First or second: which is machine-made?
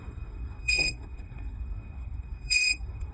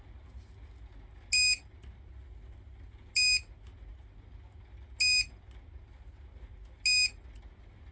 first